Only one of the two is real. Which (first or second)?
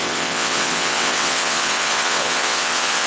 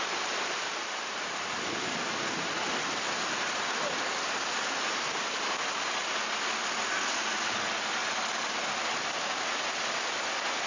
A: second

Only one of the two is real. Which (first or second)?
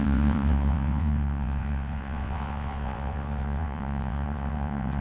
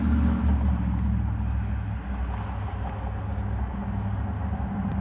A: second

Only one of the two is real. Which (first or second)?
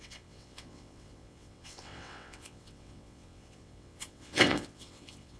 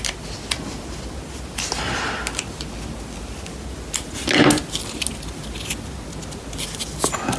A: second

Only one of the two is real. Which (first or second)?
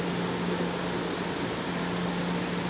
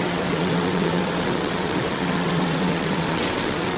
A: first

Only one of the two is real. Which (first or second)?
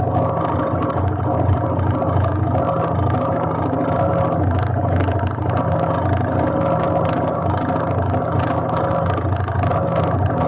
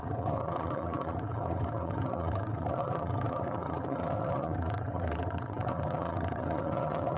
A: first